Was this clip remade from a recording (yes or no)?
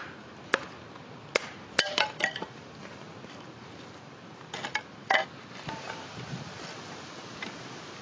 no